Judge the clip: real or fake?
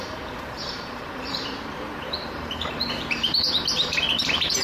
fake